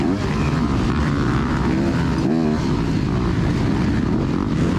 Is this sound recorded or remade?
recorded